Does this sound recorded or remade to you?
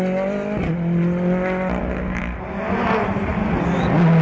recorded